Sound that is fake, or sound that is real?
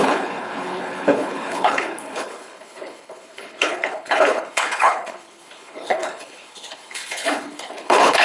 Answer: fake